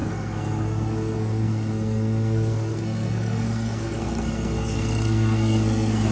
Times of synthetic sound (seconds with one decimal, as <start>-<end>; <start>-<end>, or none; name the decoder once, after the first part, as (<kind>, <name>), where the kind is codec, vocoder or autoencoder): 0.0-6.1 (codec, SNAC)